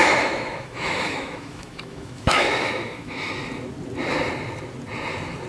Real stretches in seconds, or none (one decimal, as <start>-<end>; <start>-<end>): 3.3-5.5